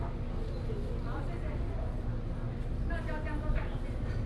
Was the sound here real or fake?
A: real